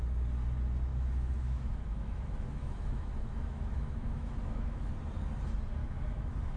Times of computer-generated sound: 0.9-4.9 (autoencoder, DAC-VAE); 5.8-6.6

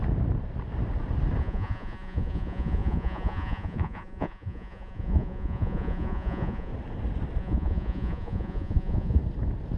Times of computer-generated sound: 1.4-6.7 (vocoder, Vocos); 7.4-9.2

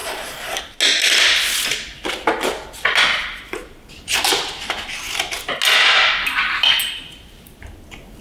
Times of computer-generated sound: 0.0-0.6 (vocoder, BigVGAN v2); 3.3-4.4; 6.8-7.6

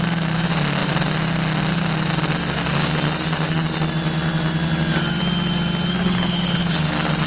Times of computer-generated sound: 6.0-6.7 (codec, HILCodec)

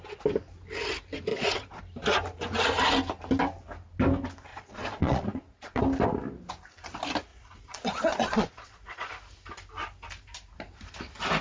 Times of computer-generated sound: 1.3-1.8 (vocoder, Vocos); 4.5-5.8; 7.3-9.1